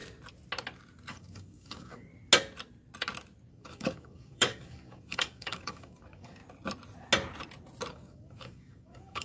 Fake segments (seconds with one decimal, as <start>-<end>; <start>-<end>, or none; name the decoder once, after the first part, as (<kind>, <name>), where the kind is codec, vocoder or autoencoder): 1.1-2.1 (codec, DAC); 3.5-6.4; 7.9-9.2